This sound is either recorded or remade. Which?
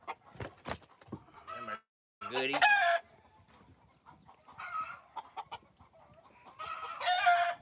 recorded